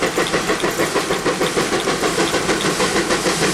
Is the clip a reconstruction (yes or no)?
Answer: no